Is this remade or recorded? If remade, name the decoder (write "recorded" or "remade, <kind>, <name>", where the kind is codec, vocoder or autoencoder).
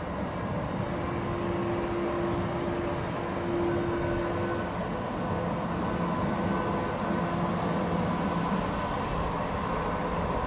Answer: recorded